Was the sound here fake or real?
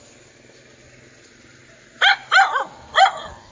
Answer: real